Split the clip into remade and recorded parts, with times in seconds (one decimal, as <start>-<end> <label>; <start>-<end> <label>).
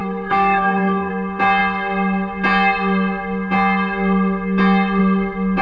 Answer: 0.0-1.1 remade; 1.1-5.6 recorded